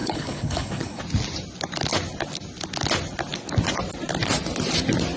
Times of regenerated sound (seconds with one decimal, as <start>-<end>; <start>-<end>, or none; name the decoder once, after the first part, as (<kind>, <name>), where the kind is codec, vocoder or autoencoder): 0.0-1.0 (codec, HILCodec)

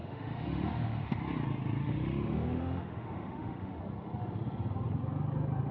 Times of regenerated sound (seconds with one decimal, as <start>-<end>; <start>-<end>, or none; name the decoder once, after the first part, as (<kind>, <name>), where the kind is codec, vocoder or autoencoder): 0.0-1.2 (autoencoder, DAC-VAE); 1.8-3.8

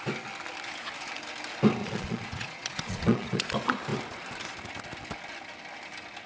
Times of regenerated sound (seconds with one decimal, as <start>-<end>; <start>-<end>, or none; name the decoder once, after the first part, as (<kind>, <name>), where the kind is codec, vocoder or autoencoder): 1.8-3.5 (vocoder, Vocos)

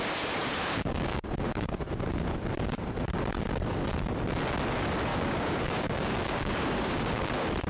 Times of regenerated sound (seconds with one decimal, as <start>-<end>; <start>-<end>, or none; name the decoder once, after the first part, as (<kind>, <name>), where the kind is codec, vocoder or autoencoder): 0.4-1.8 (codec, DAC); 5.1-7.3

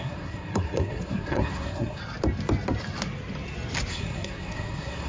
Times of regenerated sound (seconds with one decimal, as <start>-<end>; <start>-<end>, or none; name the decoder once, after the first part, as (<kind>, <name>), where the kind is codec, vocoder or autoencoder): 0.0-2.0 (codec, SNAC); 3.9-5.1

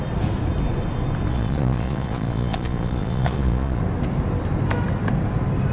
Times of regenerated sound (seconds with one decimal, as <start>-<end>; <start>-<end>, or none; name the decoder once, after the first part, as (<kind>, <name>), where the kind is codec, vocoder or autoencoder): 1.3-3.8 (vocoder, Vocos)

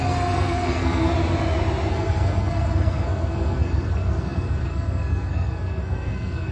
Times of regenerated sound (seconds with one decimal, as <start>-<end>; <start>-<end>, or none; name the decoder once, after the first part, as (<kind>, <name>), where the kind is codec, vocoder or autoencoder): 0.0-1.1 (codec, SNAC); 1.9-6.5

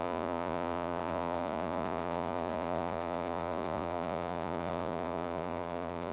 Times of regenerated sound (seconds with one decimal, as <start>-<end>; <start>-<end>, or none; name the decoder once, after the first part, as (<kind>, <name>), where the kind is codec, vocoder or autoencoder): 0.0-6.1 (vocoder, Vocos)